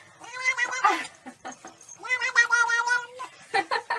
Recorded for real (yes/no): yes